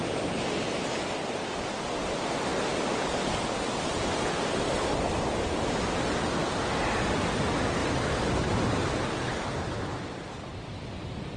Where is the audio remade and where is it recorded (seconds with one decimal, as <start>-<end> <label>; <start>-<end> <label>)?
0.0-11.4 recorded